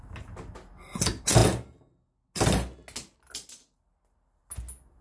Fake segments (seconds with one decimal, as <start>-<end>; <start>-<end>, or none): none